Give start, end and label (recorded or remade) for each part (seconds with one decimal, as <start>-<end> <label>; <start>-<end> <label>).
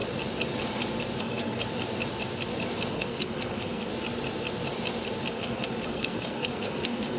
0.0-1.2 recorded; 1.2-1.6 remade; 1.6-2.9 recorded; 2.9-3.9 remade; 3.9-5.3 recorded; 5.3-7.2 remade